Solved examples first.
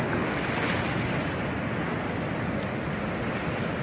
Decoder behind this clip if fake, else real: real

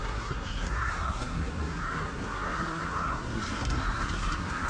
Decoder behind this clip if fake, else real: fake, codec, SNAC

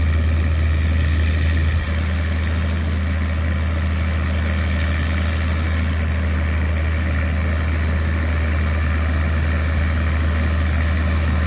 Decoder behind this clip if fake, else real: real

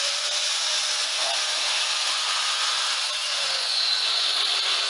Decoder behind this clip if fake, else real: fake, vocoder, Vocos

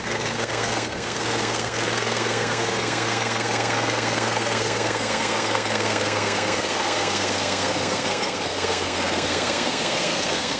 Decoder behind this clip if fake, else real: fake, codec, SNAC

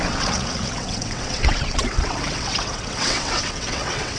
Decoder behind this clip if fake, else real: fake, vocoder, WaveNeXt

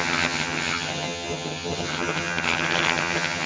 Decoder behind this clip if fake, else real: fake, vocoder, HiFi-GAN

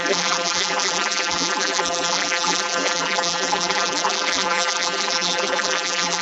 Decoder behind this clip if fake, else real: fake, vocoder, BigVGAN v2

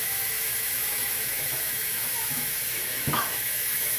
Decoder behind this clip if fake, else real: fake, autoencoder, DAC-VAE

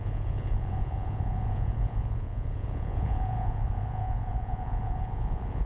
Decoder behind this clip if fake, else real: fake, vocoder, Vocos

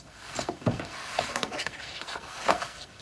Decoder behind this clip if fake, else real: fake, codec, SNAC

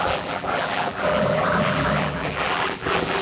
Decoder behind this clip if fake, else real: fake, vocoder, BigVGAN v2